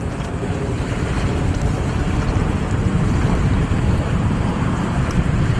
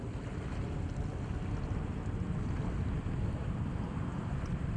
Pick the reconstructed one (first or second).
first